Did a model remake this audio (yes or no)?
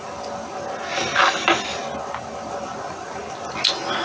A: no